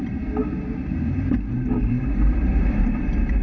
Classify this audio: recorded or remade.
remade